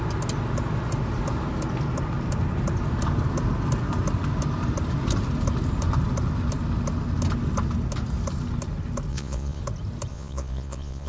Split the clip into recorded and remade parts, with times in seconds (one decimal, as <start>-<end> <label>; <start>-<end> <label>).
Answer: 0.0-9.1 recorded; 9.1-9.6 remade; 9.6-10.1 recorded; 10.1-11.1 remade